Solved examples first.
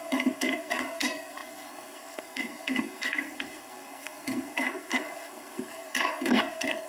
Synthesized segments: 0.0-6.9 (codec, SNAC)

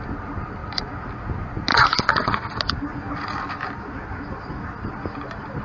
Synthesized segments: none

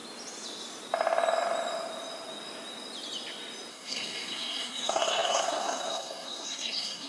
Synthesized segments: 3.7-7.1 (codec, SNAC)